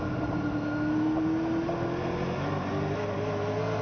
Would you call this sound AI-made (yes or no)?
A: no